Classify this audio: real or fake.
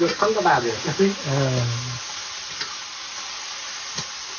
real